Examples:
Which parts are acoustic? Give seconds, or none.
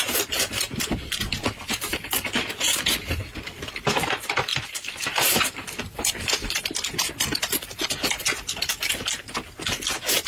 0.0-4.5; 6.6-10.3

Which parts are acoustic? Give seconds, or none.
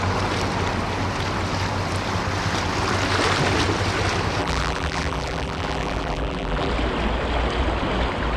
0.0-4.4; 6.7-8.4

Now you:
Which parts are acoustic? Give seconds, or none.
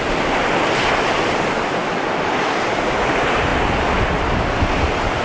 0.0-5.2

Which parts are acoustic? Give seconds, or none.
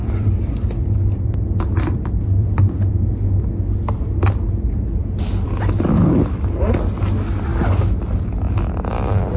2.9-9.4